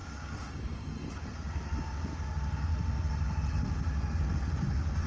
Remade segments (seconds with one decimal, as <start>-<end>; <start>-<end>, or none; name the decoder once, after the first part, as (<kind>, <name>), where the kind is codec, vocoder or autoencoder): 0.0-0.9 (codec, DAC); 1.8-2.7